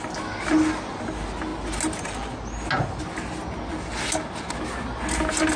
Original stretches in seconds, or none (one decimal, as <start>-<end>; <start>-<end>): 0.0-5.6